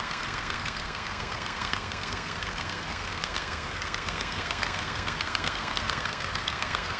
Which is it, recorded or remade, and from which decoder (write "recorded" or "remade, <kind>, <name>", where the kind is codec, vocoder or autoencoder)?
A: remade, codec, SNAC